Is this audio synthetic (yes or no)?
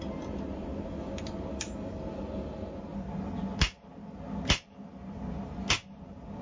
no